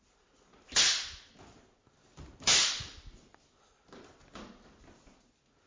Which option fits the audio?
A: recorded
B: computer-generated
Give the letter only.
A